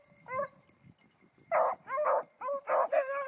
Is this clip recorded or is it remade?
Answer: recorded